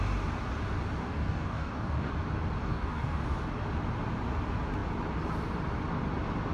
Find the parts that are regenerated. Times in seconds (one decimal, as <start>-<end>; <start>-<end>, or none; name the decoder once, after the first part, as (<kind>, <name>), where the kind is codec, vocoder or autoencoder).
1.0-2.1 (codec, DAC); 2.6-3.2